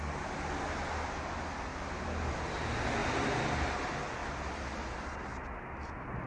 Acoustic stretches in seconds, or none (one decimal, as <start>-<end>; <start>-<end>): 0.0-6.3